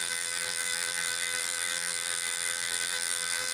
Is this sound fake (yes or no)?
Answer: yes